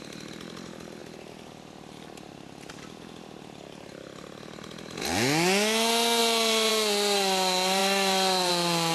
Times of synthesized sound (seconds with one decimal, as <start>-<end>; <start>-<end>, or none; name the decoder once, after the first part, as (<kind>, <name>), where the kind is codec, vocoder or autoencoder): 6.2-6.7 (vocoder, BigVGAN v2); 7.8-8.5